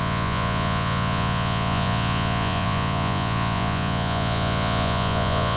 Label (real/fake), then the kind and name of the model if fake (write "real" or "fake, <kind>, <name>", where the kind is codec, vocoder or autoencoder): fake, vocoder, Vocos